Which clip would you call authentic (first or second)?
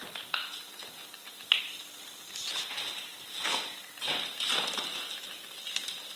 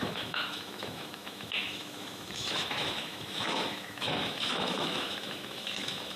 first